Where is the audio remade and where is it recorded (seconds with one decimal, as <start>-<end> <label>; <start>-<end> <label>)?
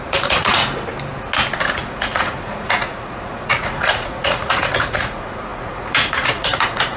0.0-0.6 remade; 0.6-1.6 recorded; 1.6-7.0 remade